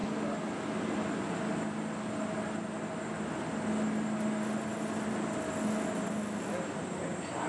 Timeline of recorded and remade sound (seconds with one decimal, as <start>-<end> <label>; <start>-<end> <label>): 0.0-7.5 recorded